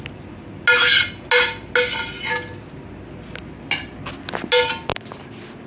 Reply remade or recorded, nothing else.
recorded